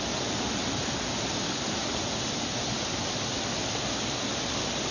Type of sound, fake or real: real